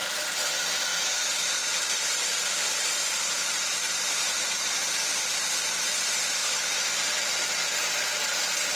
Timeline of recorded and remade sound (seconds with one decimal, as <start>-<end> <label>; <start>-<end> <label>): 0.0-0.5 remade; 0.5-0.9 recorded; 0.9-5.6 remade; 5.6-6.4 recorded; 6.4-6.9 remade; 6.9-8.8 recorded